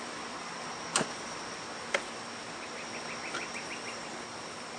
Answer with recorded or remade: recorded